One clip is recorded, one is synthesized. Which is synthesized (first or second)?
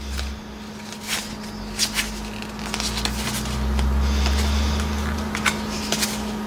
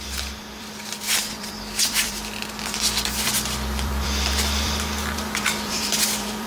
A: second